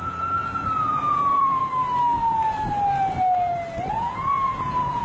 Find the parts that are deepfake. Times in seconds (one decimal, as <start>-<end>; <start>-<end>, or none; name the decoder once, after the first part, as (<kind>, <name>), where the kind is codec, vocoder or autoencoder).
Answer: 0.0-1.6 (vocoder, Vocos); 3.9-5.0